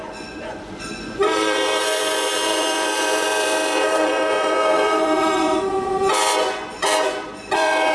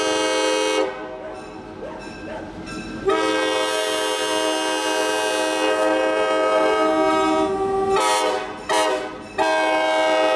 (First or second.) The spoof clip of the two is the first